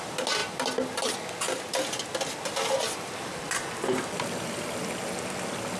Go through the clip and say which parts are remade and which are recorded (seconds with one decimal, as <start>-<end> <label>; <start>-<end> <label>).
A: 0.0-5.8 recorded